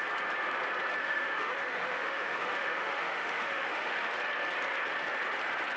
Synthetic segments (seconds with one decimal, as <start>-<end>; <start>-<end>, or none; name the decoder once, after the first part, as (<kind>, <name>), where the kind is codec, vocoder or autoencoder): 1.0-4.1 (autoencoder, DAC-VAE)